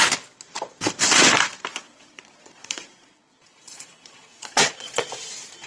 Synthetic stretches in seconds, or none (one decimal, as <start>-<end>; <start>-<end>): 1.7-5.1